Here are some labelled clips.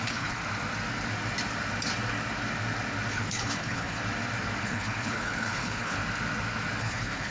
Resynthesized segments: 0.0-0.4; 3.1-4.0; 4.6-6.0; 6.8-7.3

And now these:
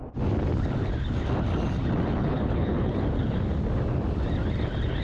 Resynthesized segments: 2.2-3.0

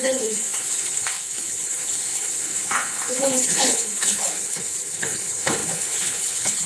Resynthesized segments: 0.0-6.7

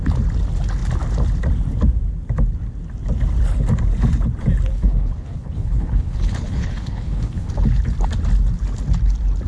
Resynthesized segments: 4.7-7.5